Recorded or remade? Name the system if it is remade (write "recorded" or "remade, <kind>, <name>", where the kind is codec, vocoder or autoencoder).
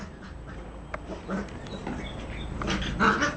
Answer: recorded